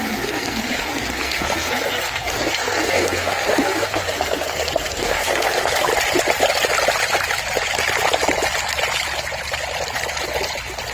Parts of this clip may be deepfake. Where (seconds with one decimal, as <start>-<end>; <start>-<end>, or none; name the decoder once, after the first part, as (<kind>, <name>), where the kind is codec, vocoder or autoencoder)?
0.0-5.9 (codec, SNAC)